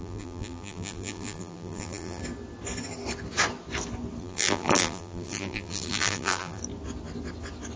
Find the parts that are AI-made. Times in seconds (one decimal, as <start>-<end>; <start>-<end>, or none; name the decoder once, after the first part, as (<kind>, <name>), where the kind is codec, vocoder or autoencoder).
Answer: 0.0-2.2 (vocoder, BigVGAN v2); 4.2-6.6